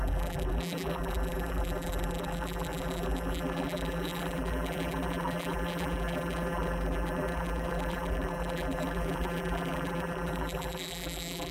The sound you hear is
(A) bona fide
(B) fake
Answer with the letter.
B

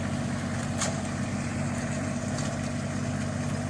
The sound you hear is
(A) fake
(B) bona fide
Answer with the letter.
B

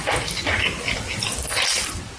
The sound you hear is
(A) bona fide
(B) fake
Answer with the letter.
A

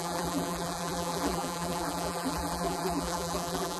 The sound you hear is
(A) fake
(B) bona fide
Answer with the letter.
A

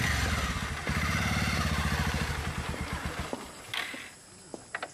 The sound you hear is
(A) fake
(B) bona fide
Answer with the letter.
B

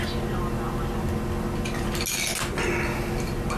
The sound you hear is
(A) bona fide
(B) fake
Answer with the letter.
A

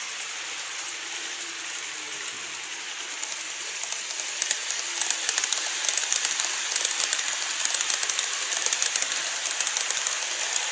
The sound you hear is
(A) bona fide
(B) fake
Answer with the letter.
B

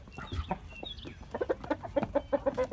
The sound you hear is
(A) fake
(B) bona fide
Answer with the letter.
A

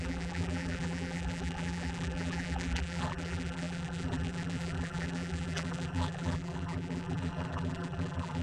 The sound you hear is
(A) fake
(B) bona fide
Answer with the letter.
A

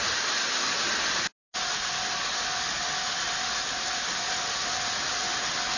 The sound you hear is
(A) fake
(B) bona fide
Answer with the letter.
B